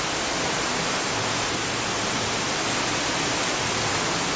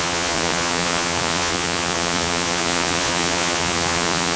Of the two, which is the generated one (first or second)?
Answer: second